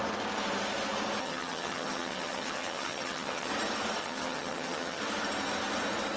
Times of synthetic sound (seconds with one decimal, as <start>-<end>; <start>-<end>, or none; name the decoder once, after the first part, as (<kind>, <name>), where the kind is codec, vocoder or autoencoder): 1.2-3.5 (vocoder, HiFi-GAN); 4.0-5.0